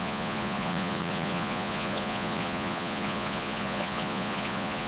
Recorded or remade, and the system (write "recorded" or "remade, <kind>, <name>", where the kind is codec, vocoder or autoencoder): remade, vocoder, Vocos